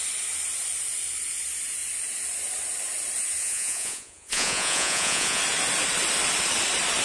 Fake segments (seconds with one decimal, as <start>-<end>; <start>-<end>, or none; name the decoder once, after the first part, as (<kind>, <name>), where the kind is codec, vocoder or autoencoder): 3.4-5.4 (vocoder, Vocos)